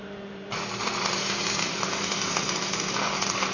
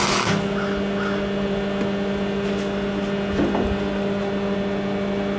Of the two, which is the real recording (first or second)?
second